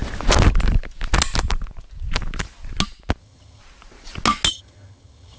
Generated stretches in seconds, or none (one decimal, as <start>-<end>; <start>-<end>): 3.2-3.6; 4.5-5.4

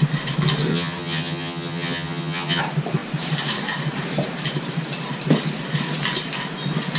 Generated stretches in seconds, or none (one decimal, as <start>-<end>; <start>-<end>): 0.7-2.6

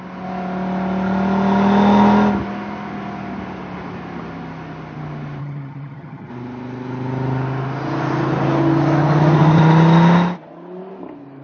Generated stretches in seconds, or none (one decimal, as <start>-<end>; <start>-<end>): 5.4-6.3

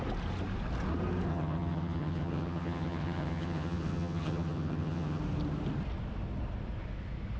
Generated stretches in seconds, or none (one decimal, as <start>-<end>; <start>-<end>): 1.3-5.2